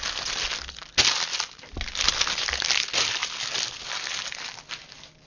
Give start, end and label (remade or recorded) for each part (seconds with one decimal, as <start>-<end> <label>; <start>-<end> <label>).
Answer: 0.0-5.3 recorded

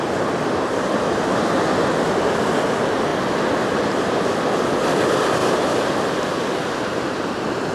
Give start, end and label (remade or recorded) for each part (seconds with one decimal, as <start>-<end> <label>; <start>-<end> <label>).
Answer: 0.0-5.4 recorded; 5.4-6.2 remade; 6.2-7.7 recorded

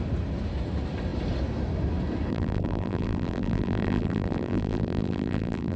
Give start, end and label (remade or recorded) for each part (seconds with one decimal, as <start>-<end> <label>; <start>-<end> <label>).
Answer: 0.0-2.3 recorded; 2.3-5.8 remade